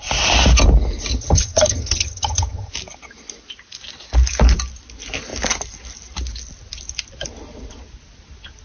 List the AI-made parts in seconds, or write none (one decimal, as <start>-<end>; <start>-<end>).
1.1-2.7